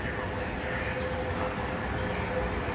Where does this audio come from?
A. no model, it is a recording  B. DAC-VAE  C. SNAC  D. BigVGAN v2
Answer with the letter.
A